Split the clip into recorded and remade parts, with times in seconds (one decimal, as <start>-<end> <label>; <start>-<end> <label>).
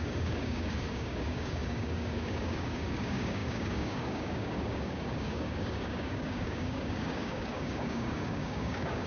0.0-9.1 remade